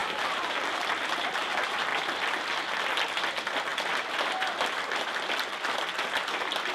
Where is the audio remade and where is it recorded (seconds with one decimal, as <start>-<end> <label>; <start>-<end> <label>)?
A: 0.0-0.7 remade; 0.7-6.7 recorded